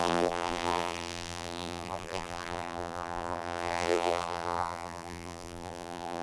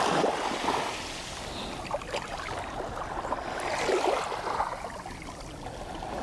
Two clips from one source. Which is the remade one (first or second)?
first